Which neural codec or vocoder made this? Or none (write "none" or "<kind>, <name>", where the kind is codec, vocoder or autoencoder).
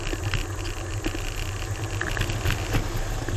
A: none